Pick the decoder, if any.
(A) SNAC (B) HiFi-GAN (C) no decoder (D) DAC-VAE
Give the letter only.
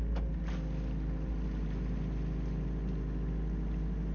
C